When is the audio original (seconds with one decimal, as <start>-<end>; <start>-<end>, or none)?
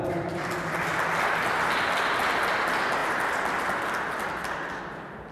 0.0-5.3